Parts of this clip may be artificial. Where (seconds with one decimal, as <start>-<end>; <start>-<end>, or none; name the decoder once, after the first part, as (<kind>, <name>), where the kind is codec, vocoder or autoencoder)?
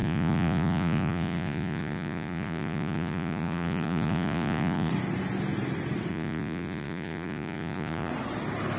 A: 0.0-4.9 (vocoder, Vocos); 6.1-8.1